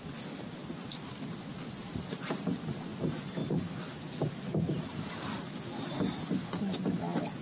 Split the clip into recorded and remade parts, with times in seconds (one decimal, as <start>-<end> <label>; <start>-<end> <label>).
0.0-7.4 recorded

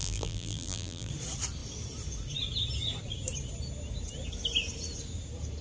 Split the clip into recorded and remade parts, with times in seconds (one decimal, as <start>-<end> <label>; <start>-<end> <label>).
0.0-1.1 remade; 1.1-5.6 recorded

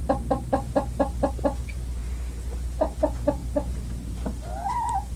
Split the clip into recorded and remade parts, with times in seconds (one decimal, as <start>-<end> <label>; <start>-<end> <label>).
0.0-3.4 recorded; 3.4-4.1 remade; 4.1-5.2 recorded

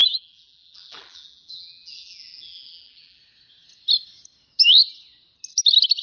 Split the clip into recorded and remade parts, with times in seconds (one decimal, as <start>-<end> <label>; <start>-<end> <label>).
0.0-3.2 remade; 3.2-6.0 recorded

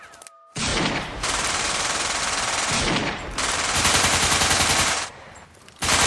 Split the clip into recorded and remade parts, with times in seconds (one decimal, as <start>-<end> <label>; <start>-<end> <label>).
0.0-0.7 recorded; 0.7-2.2 remade; 2.2-3.0 recorded; 3.0-6.1 remade

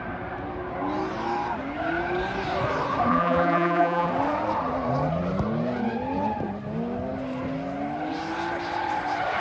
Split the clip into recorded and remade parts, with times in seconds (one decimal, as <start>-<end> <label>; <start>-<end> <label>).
0.0-3.1 recorded; 3.1-4.1 remade; 4.1-9.4 recorded

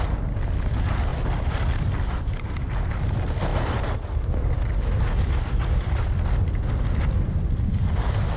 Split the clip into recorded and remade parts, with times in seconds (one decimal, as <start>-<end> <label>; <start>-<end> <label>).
0.0-1.1 recorded; 1.1-1.9 remade; 1.9-8.4 recorded

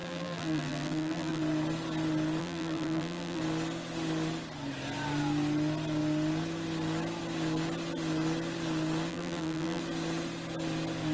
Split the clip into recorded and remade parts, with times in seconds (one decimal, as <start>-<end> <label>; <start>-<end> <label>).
0.0-1.4 remade; 1.4-2.4 recorded; 2.4-3.4 remade; 3.4-9.1 recorded; 9.1-9.8 remade; 9.8-11.1 recorded